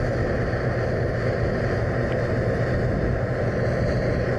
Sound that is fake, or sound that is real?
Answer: real